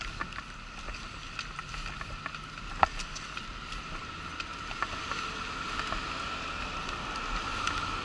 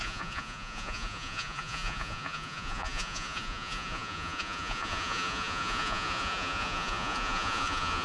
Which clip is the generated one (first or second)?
second